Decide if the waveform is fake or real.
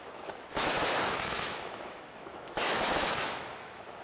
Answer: fake